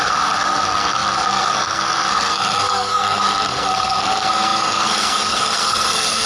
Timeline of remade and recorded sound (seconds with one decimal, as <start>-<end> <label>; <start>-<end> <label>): 0.0-6.3 remade